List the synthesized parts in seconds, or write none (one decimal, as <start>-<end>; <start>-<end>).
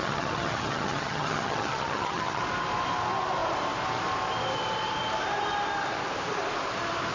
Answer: 0.0-2.4